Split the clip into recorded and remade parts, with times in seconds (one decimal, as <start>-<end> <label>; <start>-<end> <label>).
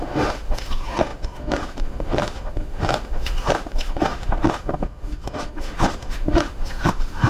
0.0-7.3 remade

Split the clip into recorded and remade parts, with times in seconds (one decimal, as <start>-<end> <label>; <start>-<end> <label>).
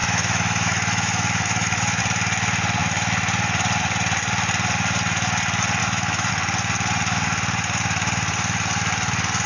0.0-2.0 remade; 2.0-5.8 recorded; 5.8-6.3 remade; 6.3-9.5 recorded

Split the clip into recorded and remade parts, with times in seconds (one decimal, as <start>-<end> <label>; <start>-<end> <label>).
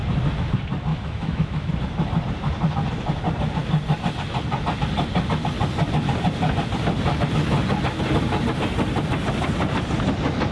0.0-0.9 recorded; 0.9-1.7 remade; 1.7-10.5 recorded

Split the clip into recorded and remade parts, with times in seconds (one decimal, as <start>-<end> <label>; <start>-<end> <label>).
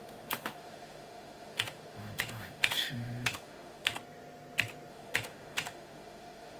0.0-3.9 remade; 3.9-4.9 recorded; 4.9-6.6 remade